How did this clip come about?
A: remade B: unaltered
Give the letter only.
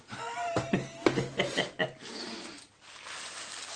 B